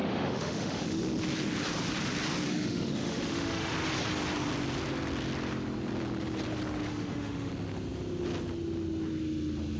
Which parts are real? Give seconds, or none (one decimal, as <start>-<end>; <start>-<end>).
1.0-2.5; 3.7-6.9; 7.5-9.8